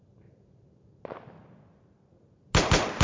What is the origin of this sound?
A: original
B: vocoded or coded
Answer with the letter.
A